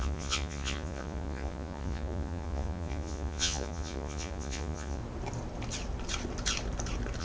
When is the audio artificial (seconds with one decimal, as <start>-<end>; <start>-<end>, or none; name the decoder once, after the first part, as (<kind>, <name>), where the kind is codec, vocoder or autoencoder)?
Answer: 0.0-5.0 (vocoder, Vocos)